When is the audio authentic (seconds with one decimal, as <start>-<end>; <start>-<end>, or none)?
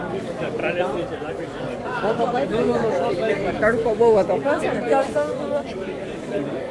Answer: 0.6-1.3